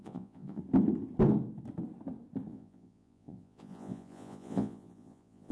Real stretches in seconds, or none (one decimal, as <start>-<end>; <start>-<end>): 0.6-2.5